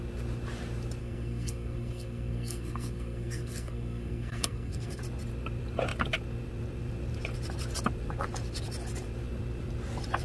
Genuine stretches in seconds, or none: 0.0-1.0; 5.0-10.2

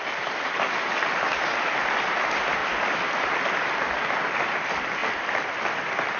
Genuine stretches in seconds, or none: 0.0-6.2